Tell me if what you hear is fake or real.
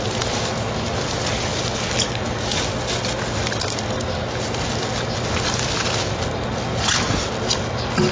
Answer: real